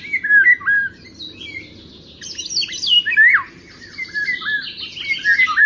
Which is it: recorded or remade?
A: recorded